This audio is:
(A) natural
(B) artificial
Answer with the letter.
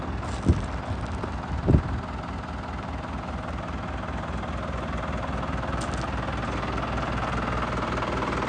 A